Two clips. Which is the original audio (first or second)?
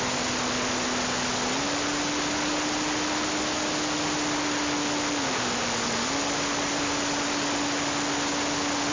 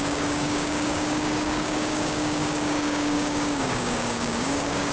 first